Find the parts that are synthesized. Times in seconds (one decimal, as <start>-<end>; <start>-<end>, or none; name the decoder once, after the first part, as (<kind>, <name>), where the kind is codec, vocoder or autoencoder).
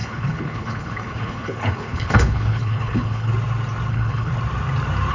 0.0-3.3 (codec, HILCodec); 3.9-4.3